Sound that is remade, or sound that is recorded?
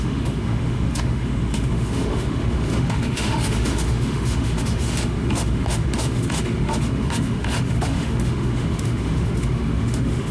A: remade